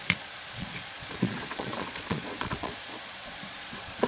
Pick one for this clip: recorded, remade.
remade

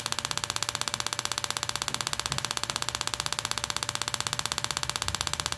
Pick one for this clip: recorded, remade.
recorded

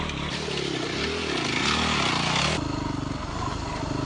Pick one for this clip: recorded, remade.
recorded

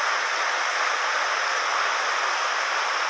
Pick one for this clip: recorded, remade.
recorded